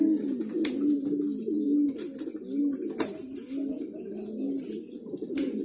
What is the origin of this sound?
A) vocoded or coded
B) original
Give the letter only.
B